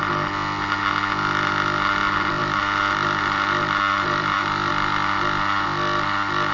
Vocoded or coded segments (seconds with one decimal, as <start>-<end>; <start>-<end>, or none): 2.4-4.7